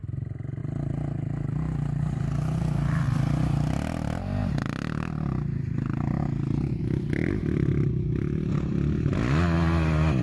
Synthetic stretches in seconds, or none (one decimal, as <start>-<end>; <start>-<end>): 0.6-2.6; 7.2-7.9